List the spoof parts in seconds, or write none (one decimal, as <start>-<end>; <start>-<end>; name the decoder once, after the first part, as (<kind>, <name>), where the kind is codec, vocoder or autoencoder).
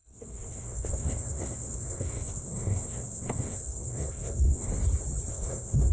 0.0-4.7 (codec, SNAC); 5.3-5.9